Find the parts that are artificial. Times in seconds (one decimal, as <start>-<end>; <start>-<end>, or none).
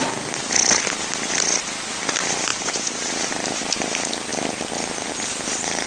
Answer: 2.5-3.1